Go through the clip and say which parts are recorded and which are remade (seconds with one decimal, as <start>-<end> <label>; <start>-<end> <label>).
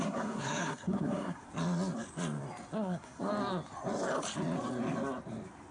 0.0-1.5 remade; 1.5-2.8 recorded; 2.8-3.3 remade; 3.3-5.7 recorded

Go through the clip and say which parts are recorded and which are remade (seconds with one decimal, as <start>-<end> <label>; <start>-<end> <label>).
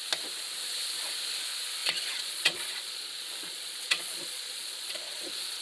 0.0-1.8 recorded; 1.8-5.6 remade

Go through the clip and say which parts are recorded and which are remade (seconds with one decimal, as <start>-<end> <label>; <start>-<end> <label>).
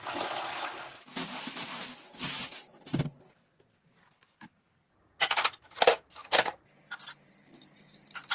0.0-8.3 recorded